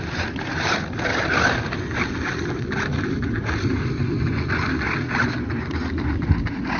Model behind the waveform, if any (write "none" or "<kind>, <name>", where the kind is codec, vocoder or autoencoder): none